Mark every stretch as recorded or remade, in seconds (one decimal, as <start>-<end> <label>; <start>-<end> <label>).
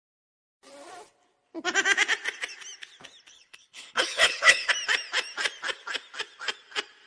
0.0-3.3 recorded; 3.3-4.7 remade; 4.7-7.1 recorded